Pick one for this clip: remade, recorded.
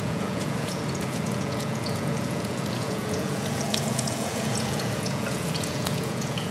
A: remade